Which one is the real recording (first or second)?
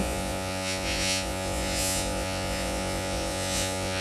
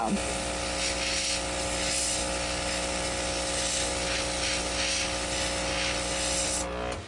second